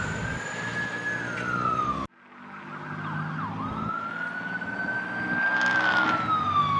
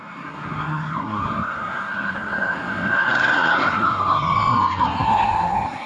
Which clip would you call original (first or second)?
first